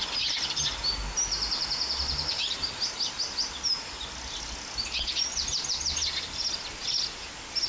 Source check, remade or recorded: recorded